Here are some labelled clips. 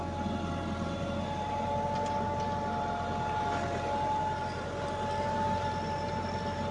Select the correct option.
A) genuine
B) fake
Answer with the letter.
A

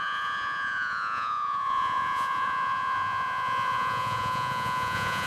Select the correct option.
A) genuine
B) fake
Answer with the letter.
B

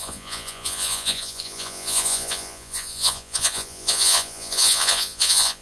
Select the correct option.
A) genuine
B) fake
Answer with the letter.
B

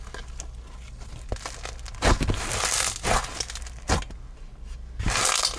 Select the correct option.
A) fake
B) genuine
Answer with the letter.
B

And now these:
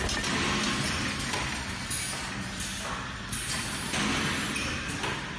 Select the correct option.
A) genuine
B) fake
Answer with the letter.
A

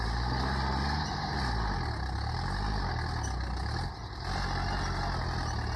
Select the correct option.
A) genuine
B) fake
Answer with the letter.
A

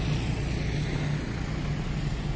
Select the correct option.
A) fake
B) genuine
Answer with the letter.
B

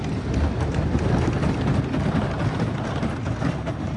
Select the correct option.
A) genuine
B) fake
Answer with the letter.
A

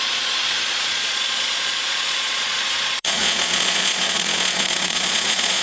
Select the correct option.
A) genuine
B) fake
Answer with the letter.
B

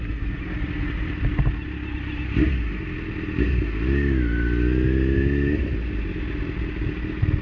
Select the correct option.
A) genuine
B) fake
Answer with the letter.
A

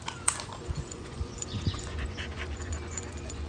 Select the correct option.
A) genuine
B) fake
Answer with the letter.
B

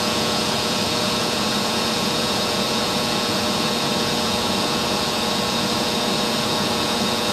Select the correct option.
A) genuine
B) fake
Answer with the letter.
B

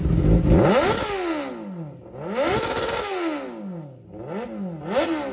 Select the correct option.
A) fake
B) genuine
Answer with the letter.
B